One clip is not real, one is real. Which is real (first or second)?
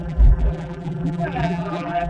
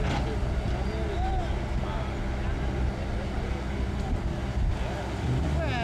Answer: second